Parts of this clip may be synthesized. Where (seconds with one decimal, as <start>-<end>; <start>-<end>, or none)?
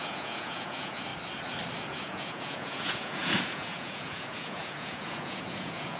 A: 0.0-1.1; 1.9-6.0